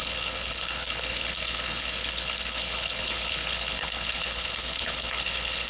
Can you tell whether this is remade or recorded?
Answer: remade